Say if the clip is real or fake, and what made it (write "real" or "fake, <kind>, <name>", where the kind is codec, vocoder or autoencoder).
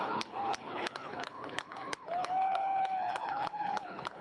fake, codec, HILCodec